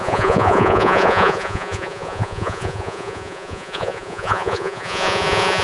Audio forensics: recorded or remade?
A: remade